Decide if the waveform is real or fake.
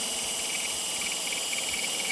real